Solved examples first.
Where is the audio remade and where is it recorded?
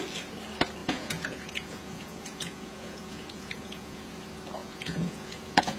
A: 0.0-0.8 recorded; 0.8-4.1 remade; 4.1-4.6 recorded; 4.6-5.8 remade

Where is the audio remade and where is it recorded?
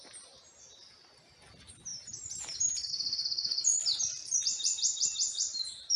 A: 0.0-1.9 recorded; 1.9-2.9 remade; 2.9-3.7 recorded; 3.7-6.0 remade